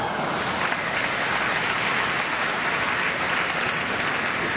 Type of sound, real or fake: real